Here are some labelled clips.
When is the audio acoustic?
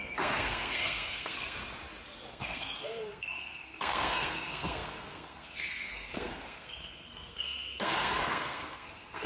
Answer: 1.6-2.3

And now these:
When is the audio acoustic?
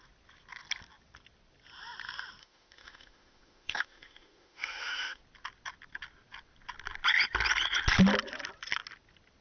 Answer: 0.0-2.4; 5.2-9.4